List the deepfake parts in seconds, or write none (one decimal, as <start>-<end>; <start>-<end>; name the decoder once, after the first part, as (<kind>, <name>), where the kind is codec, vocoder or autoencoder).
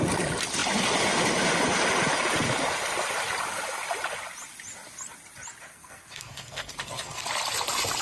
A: 5.7-7.2 (codec, SNAC)